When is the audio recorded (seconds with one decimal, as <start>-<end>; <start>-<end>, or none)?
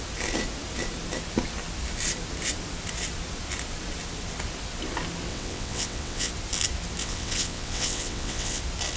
0.0-5.3; 6.3-7.0; 8.6-9.0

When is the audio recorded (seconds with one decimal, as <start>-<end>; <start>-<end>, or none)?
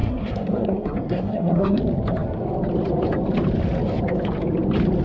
1.8-5.0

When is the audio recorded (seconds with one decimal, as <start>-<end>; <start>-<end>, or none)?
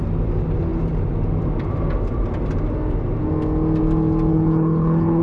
0.0-4.3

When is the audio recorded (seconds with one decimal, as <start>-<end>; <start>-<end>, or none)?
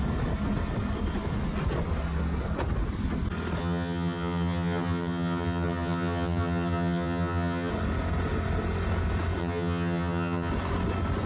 0.0-3.6; 7.7-9.4; 10.5-11.3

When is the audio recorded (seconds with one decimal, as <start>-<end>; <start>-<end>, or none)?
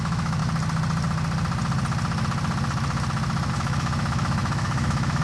0.4-3.5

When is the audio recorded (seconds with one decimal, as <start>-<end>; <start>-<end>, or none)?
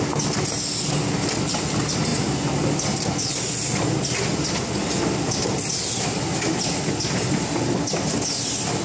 0.0-8.8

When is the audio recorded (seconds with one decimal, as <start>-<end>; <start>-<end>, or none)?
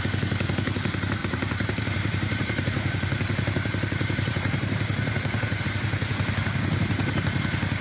0.0-1.2; 5.6-7.8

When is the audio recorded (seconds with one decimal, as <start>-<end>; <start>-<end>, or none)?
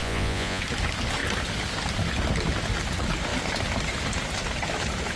0.6-5.2